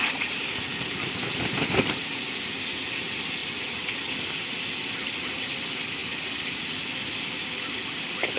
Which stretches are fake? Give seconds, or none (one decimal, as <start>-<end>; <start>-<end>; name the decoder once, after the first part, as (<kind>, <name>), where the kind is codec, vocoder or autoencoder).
none

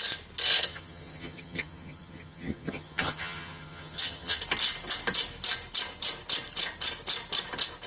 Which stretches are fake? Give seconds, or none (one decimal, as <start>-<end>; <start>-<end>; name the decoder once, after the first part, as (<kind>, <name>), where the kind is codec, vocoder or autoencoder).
0.7-4.4 (vocoder, HiFi-GAN)